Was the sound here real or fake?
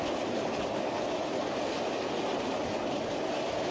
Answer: real